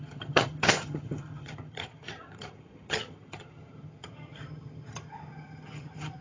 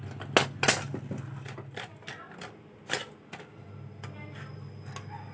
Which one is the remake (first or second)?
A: first